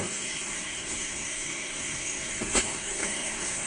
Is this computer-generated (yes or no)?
yes